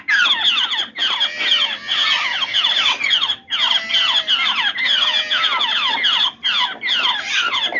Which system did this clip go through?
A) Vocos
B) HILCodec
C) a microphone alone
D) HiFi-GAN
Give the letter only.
C